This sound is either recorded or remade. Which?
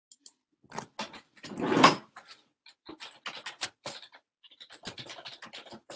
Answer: recorded